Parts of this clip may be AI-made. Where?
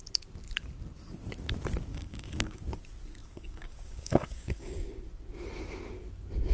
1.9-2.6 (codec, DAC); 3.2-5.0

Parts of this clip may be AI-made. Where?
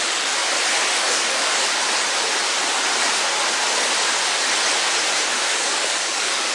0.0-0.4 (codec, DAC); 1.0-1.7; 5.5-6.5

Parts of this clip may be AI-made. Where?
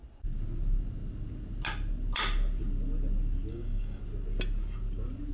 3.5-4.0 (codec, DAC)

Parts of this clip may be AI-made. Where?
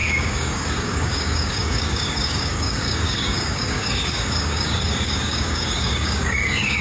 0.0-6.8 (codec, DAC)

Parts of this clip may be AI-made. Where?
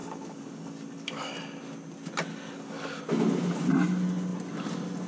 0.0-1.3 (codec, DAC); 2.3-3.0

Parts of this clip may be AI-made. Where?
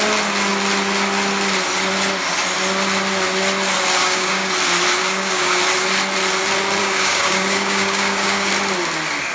4.0-4.5 (codec, DAC); 5.0-5.6; 6.8-8.5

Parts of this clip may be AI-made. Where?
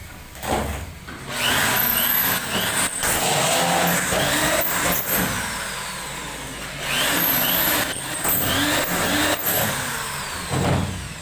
0.0-0.9 (codec, DAC); 9.5-10.2